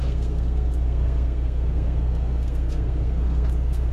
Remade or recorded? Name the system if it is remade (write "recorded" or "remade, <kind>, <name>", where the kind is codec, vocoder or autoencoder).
remade, codec, SNAC